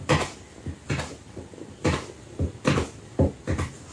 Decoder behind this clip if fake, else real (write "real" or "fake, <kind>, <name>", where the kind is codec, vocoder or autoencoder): real